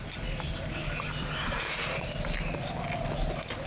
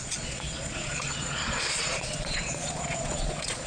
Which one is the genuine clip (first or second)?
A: first